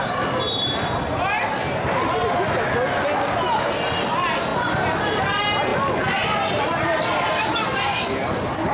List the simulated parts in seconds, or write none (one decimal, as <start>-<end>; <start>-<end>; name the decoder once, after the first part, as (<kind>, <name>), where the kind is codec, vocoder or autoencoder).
none